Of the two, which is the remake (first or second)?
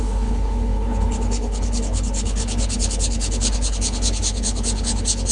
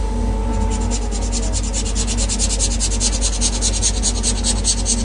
first